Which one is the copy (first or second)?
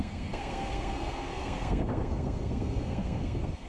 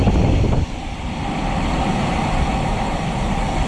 first